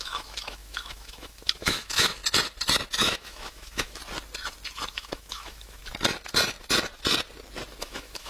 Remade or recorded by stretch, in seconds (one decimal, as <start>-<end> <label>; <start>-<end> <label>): 0.0-2.2 remade; 2.2-3.0 recorded; 3.0-4.0 remade; 4.0-4.9 recorded; 4.9-5.8 remade; 5.8-7.8 recorded; 7.8-8.3 remade